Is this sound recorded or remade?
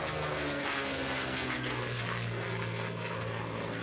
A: remade